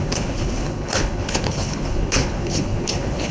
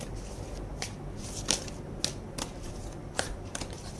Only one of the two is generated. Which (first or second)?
first